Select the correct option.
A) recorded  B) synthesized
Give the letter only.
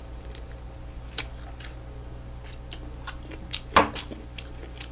A